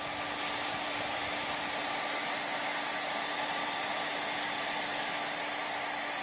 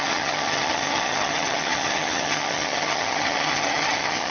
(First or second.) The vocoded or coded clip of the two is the second